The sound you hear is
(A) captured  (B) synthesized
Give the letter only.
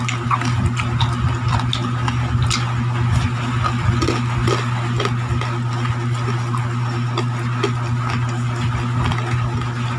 A